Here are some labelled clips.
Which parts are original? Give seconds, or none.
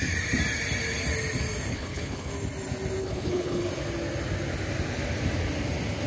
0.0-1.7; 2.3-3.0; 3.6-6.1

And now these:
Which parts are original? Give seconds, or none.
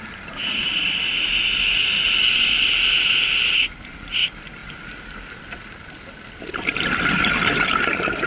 0.0-8.3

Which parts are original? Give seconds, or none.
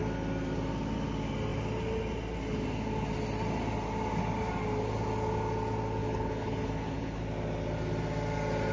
0.0-6.0; 7.2-8.7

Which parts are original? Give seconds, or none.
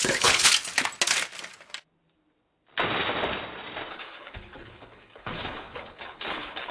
0.5-3.9